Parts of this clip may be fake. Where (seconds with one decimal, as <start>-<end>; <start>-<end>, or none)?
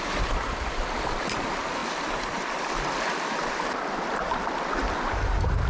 none